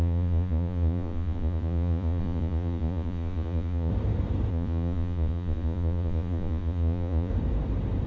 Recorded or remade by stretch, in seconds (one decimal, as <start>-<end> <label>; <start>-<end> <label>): 0.0-3.9 remade; 3.9-4.5 recorded; 4.5-7.3 remade; 7.3-8.1 recorded